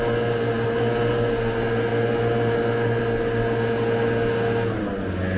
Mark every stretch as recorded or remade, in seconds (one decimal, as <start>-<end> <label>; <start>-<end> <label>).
0.0-5.4 recorded